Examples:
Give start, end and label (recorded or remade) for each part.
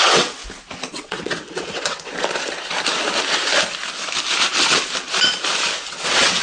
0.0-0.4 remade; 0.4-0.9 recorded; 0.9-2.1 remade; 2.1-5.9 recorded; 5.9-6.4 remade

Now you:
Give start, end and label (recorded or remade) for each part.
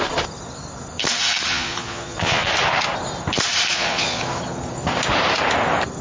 0.0-1.5 recorded; 1.5-2.5 remade; 2.5-3.7 recorded; 3.7-4.2 remade; 4.2-6.0 recorded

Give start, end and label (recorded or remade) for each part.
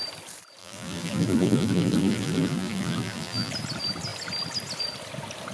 0.0-0.6 recorded; 0.6-3.5 remade; 3.5-5.5 recorded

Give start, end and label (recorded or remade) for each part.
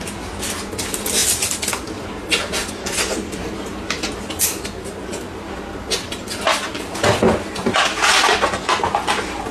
0.0-9.5 recorded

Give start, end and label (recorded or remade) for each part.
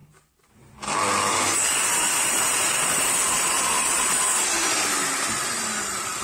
0.0-6.2 recorded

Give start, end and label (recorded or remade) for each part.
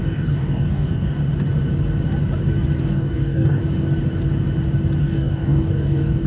0.0-1.2 remade; 1.2-2.8 recorded; 2.8-3.6 remade; 3.6-5.0 recorded; 5.0-6.3 remade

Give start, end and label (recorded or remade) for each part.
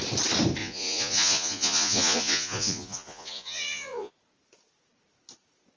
0.0-0.6 recorded; 0.6-4.1 remade; 4.1-5.8 recorded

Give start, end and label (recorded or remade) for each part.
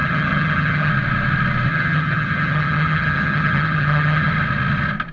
0.0-0.9 remade; 0.9-1.7 recorded; 1.7-4.3 remade; 4.3-5.1 recorded